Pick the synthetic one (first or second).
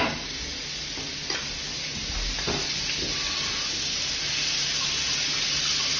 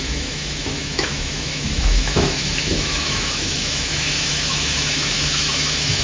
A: second